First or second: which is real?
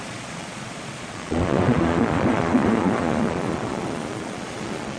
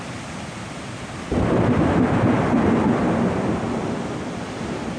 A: second